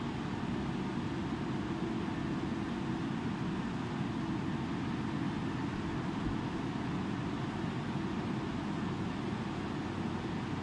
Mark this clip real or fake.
real